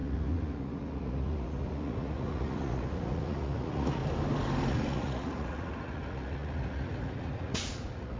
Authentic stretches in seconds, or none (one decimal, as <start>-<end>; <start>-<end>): 4.0-4.7